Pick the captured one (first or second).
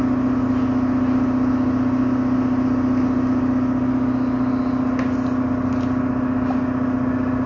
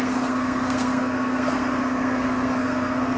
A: first